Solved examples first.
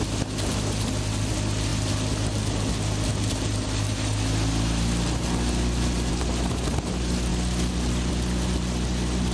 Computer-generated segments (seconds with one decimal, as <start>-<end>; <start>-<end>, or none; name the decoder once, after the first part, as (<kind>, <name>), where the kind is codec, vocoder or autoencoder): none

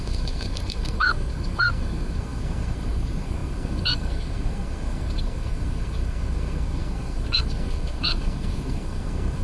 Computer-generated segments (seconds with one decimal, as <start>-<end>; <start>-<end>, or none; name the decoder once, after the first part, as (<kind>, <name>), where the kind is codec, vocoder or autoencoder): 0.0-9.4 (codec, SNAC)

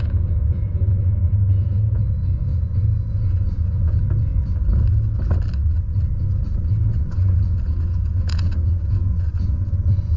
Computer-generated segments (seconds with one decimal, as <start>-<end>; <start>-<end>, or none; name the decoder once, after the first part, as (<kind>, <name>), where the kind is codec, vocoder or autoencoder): 0.0-2.5 (vocoder, Vocos); 3.1-4.3; 7.0-10.2

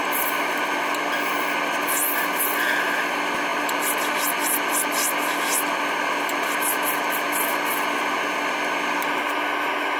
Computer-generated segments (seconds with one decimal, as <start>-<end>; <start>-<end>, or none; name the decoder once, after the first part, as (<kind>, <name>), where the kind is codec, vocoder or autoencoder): none

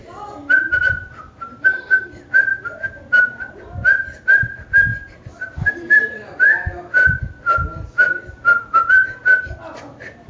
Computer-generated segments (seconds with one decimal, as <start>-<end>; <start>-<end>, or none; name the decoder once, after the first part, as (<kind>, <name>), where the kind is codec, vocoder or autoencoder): 0.4-2.1 (vocoder, BigVGAN v2); 2.5-3.5; 4.9-10.3